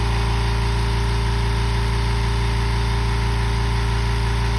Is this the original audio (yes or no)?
yes